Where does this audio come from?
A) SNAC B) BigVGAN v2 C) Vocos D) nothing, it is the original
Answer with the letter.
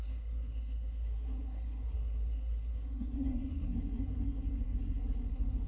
A